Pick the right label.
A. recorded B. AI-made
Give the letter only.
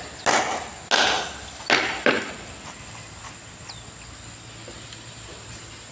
A